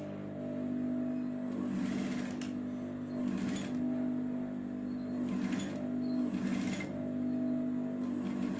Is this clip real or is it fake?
real